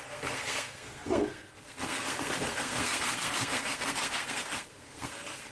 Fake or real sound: fake